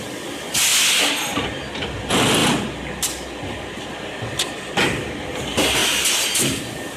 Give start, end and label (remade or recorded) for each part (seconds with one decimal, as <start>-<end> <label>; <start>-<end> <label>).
0.0-7.0 recorded